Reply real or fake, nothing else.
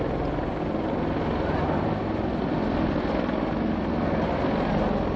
real